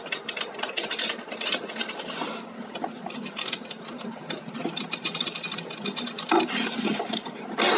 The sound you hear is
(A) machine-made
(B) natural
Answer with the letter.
B